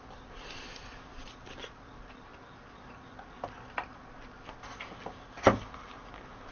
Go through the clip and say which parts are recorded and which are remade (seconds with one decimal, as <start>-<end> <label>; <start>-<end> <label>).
0.0-6.5 recorded